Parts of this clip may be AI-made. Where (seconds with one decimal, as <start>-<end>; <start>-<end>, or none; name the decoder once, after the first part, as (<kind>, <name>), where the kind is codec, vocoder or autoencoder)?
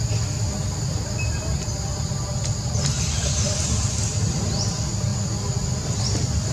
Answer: none